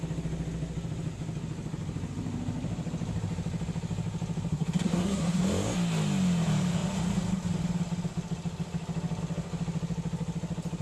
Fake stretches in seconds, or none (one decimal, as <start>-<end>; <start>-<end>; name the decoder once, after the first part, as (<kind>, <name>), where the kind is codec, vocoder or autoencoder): 4.5-5.4 (codec, SNAC)